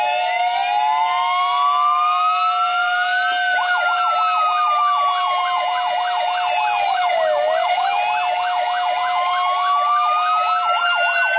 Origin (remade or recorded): recorded